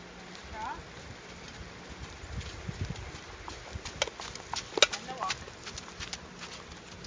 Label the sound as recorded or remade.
recorded